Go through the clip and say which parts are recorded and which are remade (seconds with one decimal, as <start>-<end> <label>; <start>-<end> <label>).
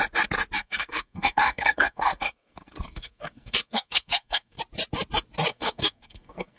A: 0.0-0.6 recorded; 0.6-4.6 remade; 4.6-5.5 recorded; 5.5-6.6 remade